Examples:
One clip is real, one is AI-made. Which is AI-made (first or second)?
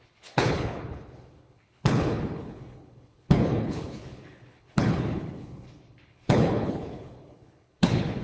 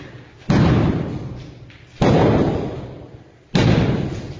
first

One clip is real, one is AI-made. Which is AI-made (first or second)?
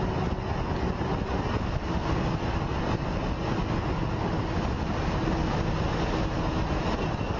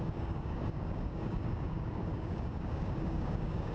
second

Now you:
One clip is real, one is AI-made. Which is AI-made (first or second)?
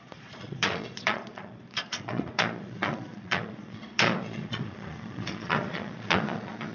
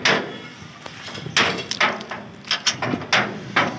first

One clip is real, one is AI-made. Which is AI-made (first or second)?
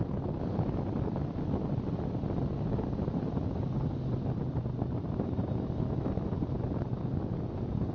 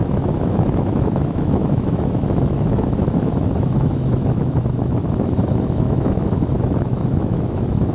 second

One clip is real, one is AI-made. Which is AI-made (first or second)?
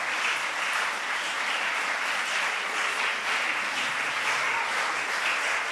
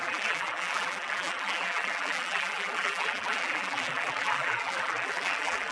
second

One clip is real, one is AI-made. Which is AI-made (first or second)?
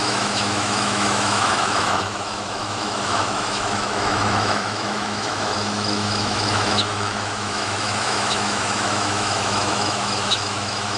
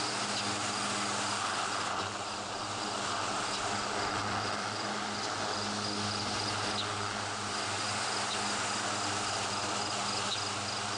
first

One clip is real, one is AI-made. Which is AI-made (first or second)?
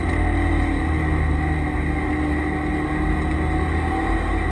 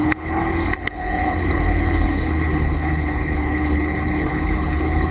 second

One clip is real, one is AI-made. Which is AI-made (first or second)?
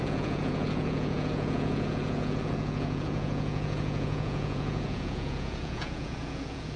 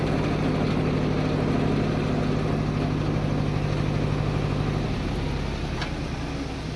first